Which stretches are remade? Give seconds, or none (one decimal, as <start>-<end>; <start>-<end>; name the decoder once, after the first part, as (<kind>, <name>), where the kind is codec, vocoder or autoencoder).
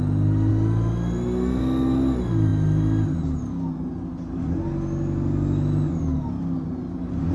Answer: none